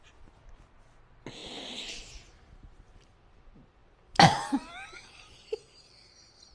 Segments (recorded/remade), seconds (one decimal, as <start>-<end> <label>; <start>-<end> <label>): 0.0-6.5 recorded